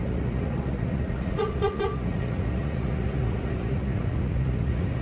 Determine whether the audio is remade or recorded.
remade